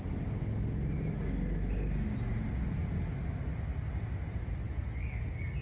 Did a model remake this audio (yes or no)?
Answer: no